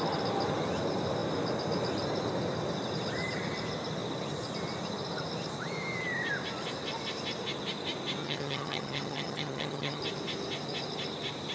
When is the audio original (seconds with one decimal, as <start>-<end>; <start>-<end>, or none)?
0.0-8.2; 10.0-11.5